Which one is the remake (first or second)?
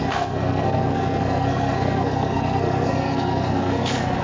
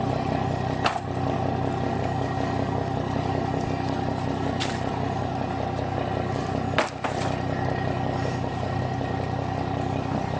first